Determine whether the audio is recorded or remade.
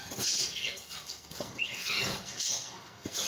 remade